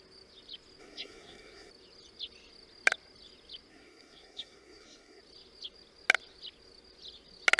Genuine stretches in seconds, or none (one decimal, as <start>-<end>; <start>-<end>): 0.0-0.8; 1.7-3.7; 5.2-7.6